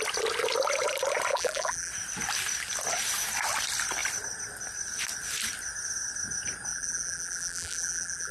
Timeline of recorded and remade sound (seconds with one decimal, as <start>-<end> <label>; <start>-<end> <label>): 0.0-1.3 recorded; 1.3-1.9 remade; 1.9-6.7 recorded; 6.7-8.3 remade